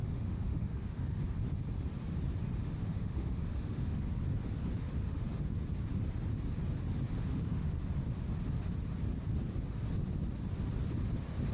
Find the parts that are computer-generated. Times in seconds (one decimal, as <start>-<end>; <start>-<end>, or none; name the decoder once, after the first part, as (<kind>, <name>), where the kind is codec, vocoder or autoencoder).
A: 0.0-1.2 (autoencoder, DAC-VAE); 2.6-4.0; 4.6-5.4; 7.2-7.8